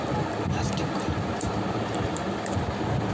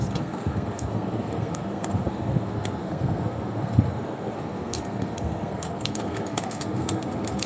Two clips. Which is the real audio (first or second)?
first